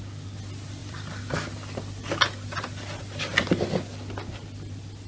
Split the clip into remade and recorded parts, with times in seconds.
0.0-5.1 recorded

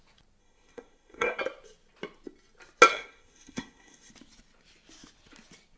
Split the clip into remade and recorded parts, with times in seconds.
0.0-0.4 recorded; 0.4-1.4 remade; 1.4-2.9 recorded; 2.9-4.1 remade; 4.1-5.8 recorded

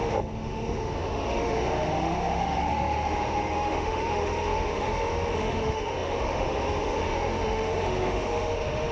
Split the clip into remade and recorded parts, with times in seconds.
0.0-8.9 remade